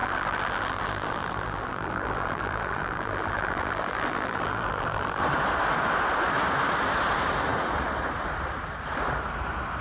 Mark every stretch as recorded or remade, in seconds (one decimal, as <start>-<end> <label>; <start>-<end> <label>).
0.0-5.2 remade; 5.2-9.8 recorded